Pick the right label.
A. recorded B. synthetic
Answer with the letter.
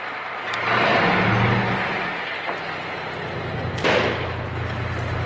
A